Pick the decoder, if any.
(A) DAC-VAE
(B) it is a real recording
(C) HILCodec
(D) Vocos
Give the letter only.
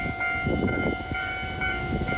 A